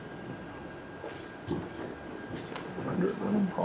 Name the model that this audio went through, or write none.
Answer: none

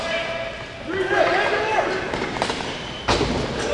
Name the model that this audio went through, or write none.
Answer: none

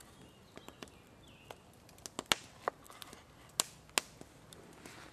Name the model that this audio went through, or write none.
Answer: none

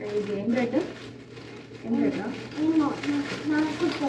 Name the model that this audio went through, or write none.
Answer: none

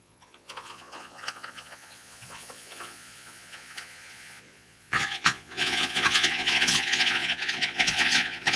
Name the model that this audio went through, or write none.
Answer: vocoder, Vocos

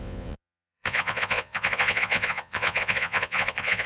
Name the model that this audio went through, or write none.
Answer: vocoder, Vocos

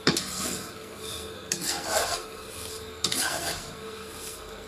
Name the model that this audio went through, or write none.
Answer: codec, SNAC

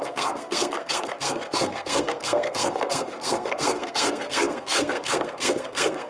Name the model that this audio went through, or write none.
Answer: codec, SNAC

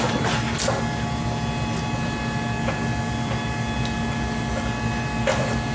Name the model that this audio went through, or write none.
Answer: none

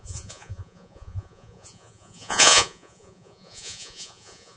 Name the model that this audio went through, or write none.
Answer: vocoder, Vocos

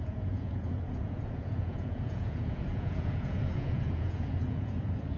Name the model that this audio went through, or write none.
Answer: vocoder, Vocos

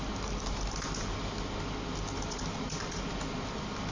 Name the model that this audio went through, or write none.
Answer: none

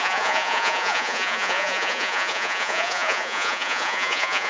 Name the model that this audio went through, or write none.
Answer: vocoder, Vocos